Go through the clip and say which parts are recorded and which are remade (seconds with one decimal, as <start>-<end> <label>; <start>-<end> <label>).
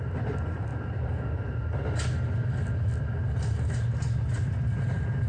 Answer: 0.0-5.3 recorded